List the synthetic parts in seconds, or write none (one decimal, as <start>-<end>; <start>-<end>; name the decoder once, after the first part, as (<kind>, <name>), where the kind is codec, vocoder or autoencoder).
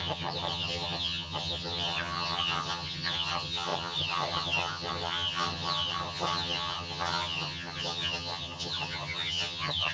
0.0-9.9 (vocoder, HiFi-GAN)